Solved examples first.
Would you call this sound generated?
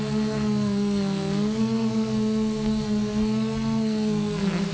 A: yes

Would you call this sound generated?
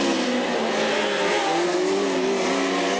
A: no